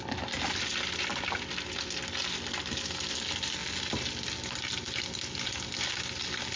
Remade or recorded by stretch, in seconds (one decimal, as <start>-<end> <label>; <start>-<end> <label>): 0.0-6.6 recorded